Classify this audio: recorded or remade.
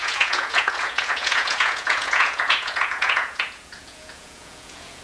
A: remade